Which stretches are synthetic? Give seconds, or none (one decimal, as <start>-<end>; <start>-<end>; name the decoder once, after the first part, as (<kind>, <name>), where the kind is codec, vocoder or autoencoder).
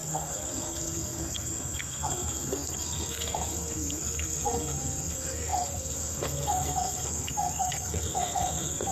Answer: 0.0-8.9 (codec, SNAC)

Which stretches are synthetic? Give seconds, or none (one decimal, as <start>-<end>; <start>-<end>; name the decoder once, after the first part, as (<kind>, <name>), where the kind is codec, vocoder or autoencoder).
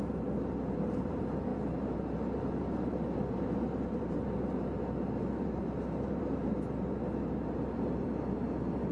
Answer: none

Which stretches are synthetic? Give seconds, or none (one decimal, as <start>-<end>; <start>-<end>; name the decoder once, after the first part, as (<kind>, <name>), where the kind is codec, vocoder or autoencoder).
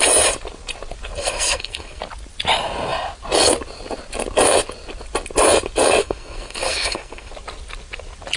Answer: 1.2-2.0 (codec, SNAC); 6.0-7.3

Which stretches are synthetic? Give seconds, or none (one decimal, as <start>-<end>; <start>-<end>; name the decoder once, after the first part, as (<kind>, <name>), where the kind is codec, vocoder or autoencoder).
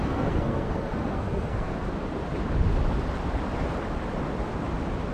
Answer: 0.0-1.7 (codec, SNAC)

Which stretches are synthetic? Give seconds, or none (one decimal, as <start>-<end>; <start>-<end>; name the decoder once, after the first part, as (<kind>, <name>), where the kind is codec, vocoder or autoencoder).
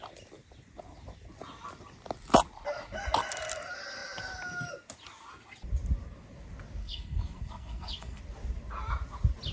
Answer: 6.8-8.2 (codec, SNAC)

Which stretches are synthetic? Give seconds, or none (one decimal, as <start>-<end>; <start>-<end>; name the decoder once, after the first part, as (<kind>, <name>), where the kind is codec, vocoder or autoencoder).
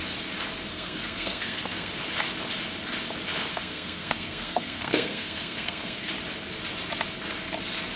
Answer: 0.7-2.0 (codec, SNAC); 3.5-6.1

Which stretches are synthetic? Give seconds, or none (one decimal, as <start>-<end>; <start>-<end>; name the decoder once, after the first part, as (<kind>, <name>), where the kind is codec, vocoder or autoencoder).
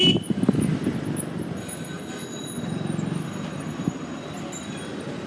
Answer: none